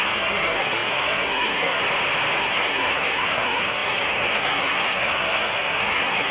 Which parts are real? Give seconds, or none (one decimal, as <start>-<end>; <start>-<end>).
1.8-2.4